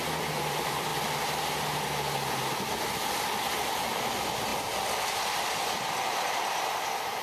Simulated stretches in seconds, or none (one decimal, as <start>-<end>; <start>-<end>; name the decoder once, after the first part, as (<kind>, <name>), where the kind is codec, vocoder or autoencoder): none